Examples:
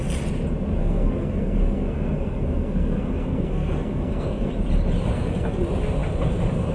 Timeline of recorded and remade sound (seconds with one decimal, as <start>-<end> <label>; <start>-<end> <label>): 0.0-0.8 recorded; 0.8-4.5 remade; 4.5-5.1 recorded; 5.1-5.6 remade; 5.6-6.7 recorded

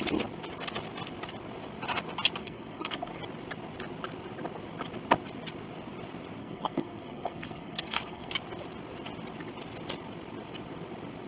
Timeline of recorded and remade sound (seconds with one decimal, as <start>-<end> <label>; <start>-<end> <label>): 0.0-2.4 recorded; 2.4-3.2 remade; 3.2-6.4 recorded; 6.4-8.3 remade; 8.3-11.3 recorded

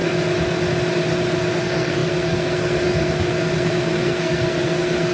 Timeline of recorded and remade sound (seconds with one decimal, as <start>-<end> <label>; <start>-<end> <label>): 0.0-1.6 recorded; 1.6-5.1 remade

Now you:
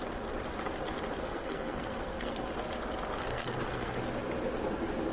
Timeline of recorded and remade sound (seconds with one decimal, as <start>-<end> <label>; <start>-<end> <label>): 0.0-1.2 recorded; 1.2-2.5 remade; 2.5-3.3 recorded; 3.3-4.0 remade; 4.0-5.1 recorded

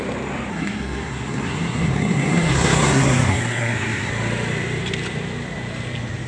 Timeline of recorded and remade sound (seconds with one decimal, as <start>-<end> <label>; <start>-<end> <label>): 0.0-0.5 recorded; 0.5-4.1 remade; 4.1-6.3 recorded